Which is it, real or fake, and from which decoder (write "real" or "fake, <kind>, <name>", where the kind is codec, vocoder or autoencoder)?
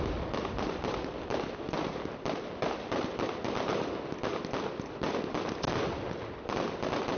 real